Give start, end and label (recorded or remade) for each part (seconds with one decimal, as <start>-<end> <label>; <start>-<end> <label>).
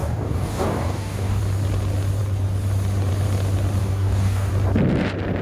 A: 0.0-1.4 remade; 1.4-3.8 recorded; 3.8-4.5 remade; 4.5-5.4 recorded